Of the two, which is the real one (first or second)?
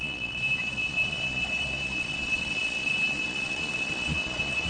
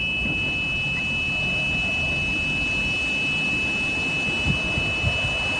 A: second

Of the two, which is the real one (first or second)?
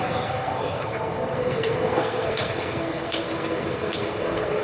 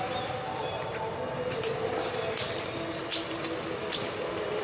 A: second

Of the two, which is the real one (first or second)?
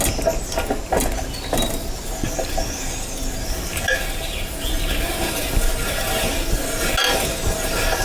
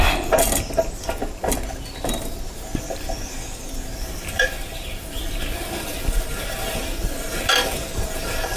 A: first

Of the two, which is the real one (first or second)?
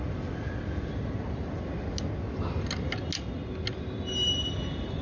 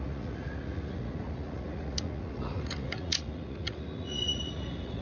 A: first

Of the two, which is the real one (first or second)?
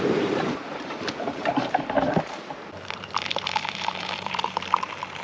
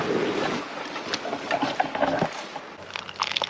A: second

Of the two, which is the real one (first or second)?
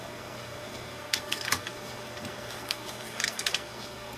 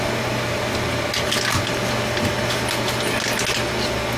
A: second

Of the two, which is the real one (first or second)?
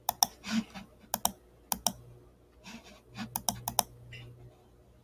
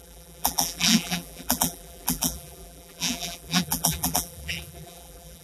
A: first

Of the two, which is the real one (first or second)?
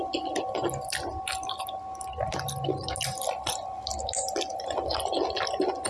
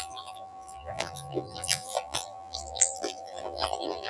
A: first